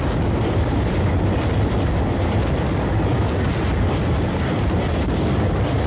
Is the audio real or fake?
real